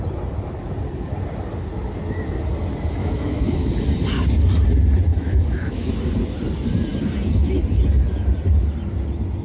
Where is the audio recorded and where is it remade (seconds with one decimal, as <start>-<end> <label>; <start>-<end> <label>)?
0.0-3.0 recorded; 3.0-3.7 remade; 3.7-5.1 recorded; 5.1-5.9 remade; 5.9-9.4 recorded